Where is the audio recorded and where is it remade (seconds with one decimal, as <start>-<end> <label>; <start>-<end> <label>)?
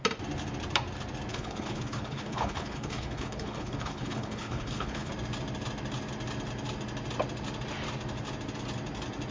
0.0-1.3 recorded; 1.3-5.1 remade; 5.1-9.3 recorded